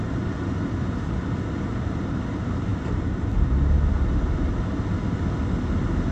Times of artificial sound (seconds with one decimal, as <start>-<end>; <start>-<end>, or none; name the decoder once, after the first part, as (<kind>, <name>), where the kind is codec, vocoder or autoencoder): none